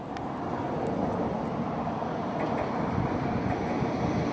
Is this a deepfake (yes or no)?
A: no